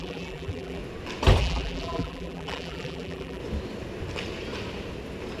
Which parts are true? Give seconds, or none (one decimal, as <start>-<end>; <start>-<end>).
0.8-1.4; 3.4-5.4